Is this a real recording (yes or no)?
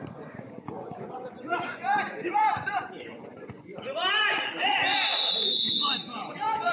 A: no